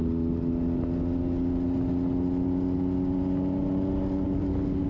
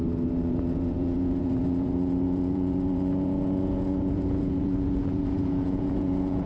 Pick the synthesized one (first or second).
second